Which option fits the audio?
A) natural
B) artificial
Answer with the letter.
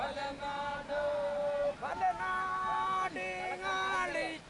A